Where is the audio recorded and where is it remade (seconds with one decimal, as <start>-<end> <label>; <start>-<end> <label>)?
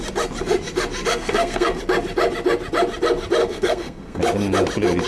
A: 0.0-1.1 recorded; 1.1-1.8 remade; 1.8-3.4 recorded; 3.4-4.2 remade; 4.2-5.1 recorded